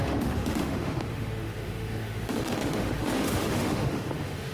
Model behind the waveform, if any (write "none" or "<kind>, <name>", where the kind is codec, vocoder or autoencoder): autoencoder, DAC-VAE